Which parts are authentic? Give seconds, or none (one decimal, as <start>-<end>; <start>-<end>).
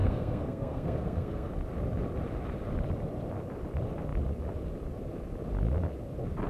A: 1.5-6.5